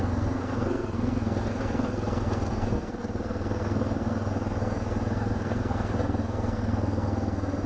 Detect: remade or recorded remade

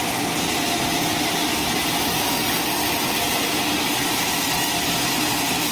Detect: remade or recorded recorded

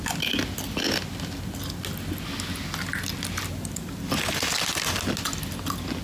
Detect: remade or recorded recorded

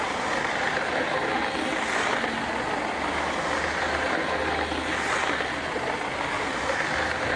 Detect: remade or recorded recorded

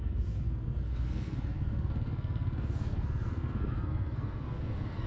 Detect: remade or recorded remade